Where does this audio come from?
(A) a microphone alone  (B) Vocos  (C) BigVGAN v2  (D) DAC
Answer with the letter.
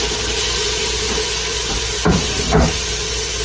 A